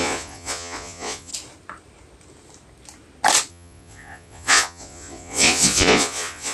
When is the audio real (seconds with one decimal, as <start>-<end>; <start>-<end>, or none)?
1.3-3.5